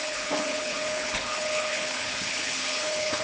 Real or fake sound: fake